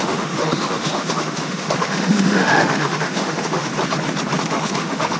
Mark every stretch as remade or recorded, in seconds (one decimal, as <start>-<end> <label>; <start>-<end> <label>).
0.0-3.7 remade; 3.7-4.4 recorded; 4.4-5.2 remade